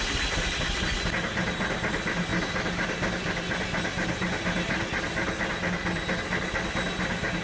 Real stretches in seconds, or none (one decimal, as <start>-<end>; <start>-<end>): 0.0-7.4